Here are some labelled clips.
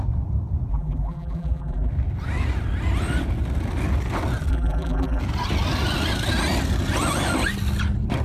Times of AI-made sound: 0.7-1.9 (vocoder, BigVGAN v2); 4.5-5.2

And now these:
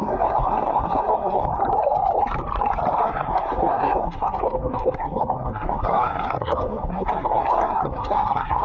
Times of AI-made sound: 0.0-1.5 (codec, SNAC); 3.0-8.6

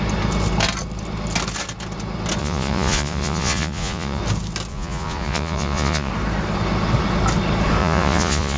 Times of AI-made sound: 2.4-4.2 (vocoder, Vocos); 4.7-6.1; 7.8-8.6

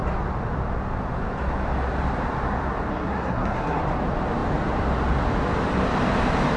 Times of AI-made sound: 2.9-3.8 (codec, SNAC)